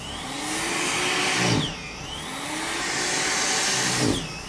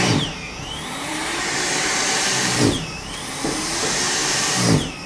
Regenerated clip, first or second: second